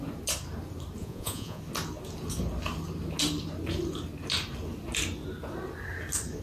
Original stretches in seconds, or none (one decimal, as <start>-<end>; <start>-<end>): 0.0-1.0; 1.6-6.4